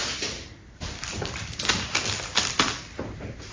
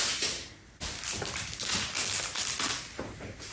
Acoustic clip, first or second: second